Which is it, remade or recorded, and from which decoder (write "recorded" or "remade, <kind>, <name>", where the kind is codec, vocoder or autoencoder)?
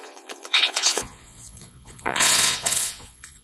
remade, vocoder, Vocos